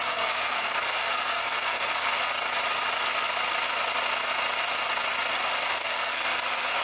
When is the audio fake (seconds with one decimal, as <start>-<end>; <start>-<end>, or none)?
0.0-2.1; 5.7-6.8